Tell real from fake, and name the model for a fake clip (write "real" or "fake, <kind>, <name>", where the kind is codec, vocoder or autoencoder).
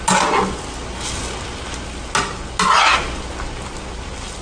real